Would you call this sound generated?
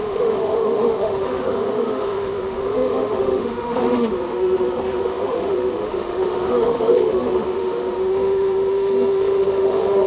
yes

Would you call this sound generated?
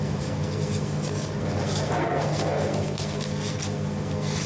yes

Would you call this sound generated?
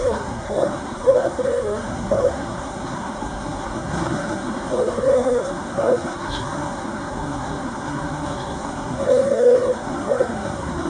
yes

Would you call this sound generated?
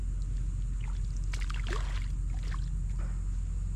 no